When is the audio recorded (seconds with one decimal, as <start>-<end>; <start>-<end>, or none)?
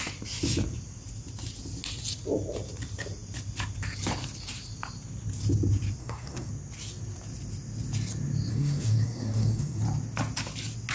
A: 0.0-6.0; 6.5-8.5; 9.8-10.9